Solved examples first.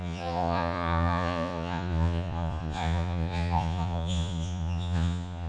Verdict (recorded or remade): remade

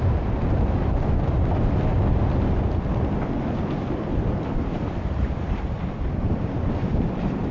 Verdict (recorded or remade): recorded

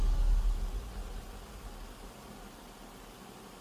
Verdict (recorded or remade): recorded